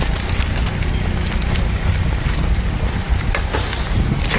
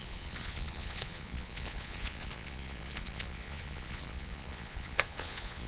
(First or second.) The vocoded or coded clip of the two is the second